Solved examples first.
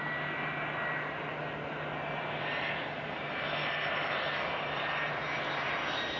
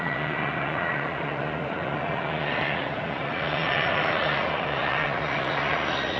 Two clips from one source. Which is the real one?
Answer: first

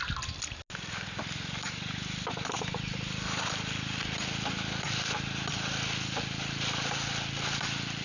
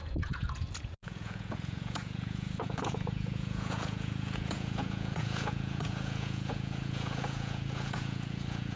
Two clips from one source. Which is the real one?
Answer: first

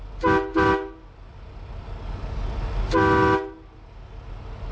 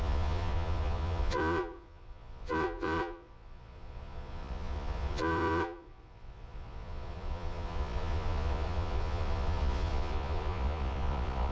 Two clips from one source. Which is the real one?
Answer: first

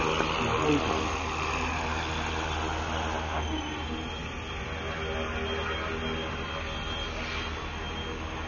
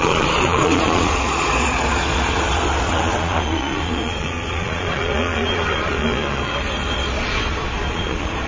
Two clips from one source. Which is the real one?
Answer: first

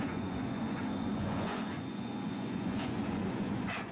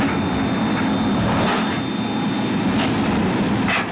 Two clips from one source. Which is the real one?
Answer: second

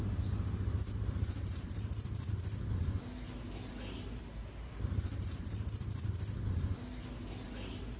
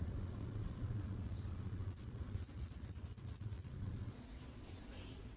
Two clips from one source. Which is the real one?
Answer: first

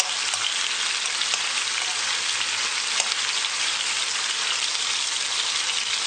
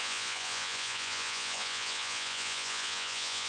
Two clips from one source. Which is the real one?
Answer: first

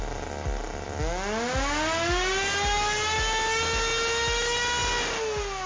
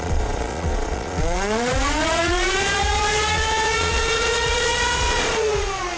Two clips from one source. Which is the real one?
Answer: first